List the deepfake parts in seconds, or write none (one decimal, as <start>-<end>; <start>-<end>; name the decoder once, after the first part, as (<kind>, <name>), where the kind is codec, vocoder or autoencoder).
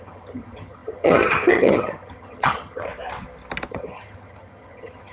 0.0-2.9 (vocoder, HiFi-GAN); 3.7-5.1